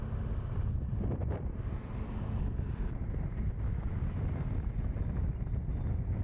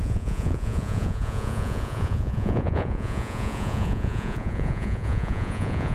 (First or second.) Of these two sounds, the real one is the first